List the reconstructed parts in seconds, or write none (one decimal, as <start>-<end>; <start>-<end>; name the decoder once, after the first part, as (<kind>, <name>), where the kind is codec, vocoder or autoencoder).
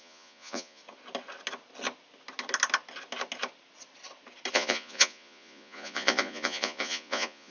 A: 0.0-0.8 (vocoder, Vocos); 4.5-7.5